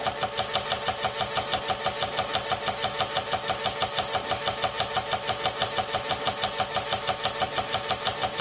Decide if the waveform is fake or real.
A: real